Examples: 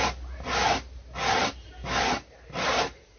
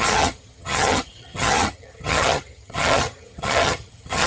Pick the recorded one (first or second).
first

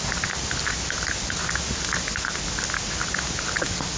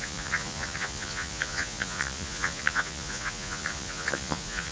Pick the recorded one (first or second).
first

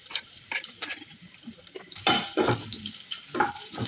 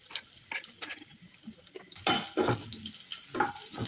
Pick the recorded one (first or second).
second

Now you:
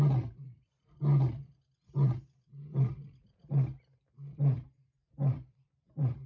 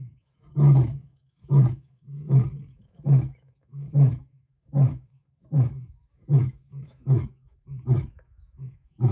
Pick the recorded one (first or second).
first